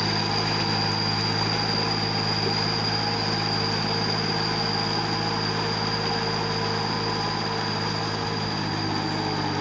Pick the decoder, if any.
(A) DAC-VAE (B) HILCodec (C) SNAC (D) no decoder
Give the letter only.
D